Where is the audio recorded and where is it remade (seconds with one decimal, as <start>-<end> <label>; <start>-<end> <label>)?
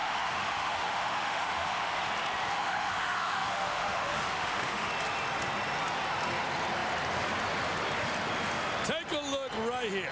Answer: 0.0-2.1 remade; 2.1-2.5 recorded; 2.5-4.9 remade; 4.9-10.1 recorded